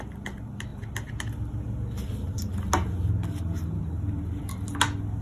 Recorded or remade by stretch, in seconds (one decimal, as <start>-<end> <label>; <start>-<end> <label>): 0.0-5.2 recorded